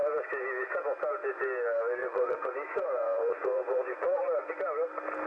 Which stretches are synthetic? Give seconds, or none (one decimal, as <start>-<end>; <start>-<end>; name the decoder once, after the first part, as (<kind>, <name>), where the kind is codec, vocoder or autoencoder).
2.0-4.5 (vocoder, Vocos)